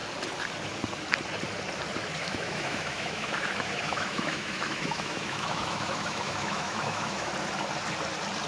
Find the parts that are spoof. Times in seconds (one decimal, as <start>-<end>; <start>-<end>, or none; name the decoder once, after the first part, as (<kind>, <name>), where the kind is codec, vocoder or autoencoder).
2.2-7.3 (autoencoder, DAC-VAE)